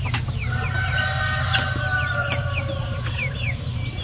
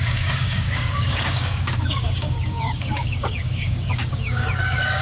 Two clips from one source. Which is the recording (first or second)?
first